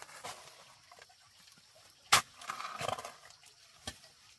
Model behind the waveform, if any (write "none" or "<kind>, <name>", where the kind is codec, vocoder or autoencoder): none